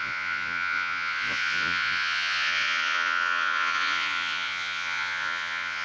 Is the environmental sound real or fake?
fake